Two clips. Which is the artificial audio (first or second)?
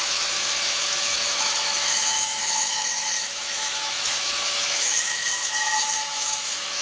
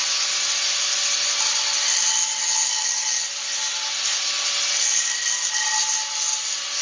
first